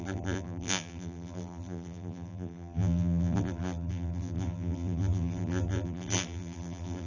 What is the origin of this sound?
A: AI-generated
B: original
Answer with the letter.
A